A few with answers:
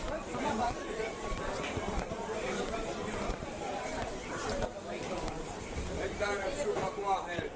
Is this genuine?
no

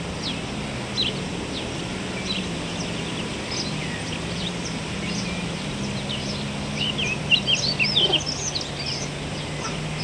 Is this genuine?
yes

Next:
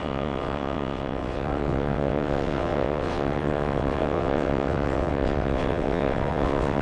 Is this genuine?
no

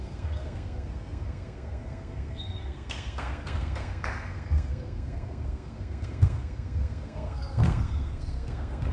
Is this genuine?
no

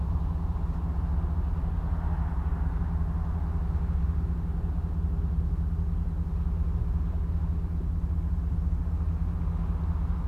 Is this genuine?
yes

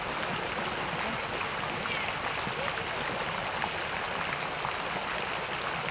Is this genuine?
yes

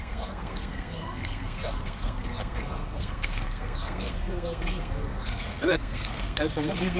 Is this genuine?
no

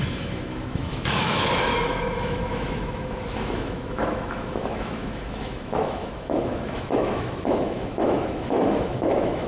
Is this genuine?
no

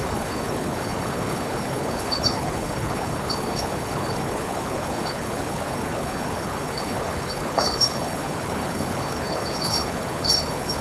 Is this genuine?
no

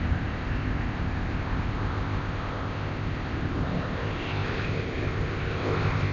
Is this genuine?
no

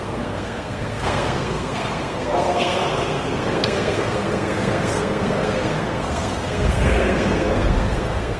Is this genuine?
no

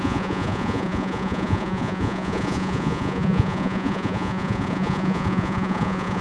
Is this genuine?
no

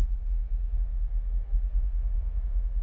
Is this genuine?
no